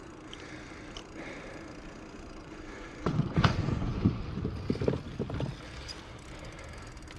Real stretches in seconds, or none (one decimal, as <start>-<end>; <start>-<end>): 0.0-2.4; 4.2-7.2